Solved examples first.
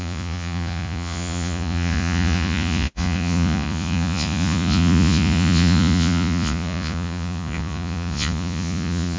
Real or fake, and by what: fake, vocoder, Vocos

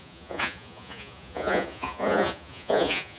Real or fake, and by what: fake, vocoder, Vocos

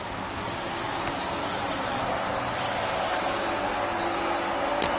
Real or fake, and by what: real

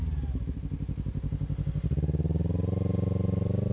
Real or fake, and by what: real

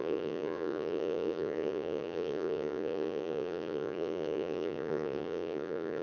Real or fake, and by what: fake, vocoder, Vocos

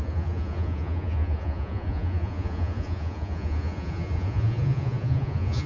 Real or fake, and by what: fake, vocoder, Vocos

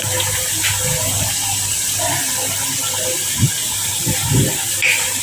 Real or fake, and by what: real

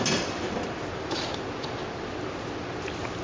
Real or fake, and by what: real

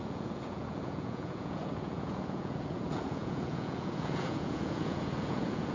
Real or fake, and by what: fake, vocoder, Vocos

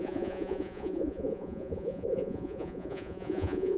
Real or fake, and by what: fake, vocoder, Vocos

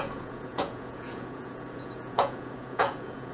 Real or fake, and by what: fake, vocoder, Vocos